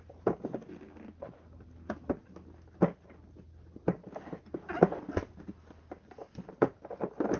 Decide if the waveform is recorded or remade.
recorded